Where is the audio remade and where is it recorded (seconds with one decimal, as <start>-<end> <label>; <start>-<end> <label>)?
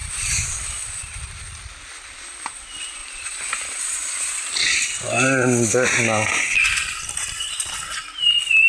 0.0-0.9 remade; 0.9-3.0 recorded; 3.0-3.8 remade; 3.8-6.8 recorded; 6.8-7.7 remade; 7.7-8.7 recorded